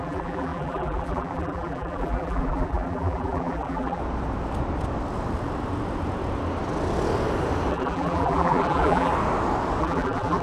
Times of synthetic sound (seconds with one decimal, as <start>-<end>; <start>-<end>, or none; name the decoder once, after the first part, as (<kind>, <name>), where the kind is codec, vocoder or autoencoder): 0.0-4.0 (vocoder, BigVGAN v2); 7.7-9.1; 9.8-10.4

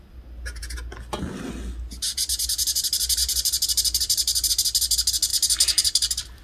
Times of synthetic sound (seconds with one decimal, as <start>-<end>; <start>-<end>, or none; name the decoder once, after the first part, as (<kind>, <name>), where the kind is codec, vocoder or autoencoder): 3.2-4.5 (vocoder, BigVGAN v2); 5.3-6.4

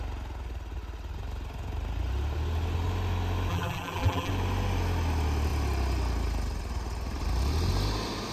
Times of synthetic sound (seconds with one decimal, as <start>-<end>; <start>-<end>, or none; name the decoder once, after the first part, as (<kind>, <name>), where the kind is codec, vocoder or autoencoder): 3.5-4.3 (vocoder, BigVGAN v2)